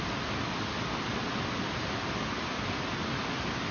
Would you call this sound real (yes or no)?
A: yes